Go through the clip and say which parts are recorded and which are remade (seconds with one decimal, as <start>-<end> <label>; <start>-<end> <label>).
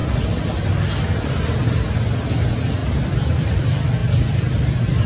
0.0-2.8 recorded; 2.8-3.6 remade; 3.6-5.1 recorded